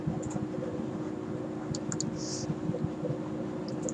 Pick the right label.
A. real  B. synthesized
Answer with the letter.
A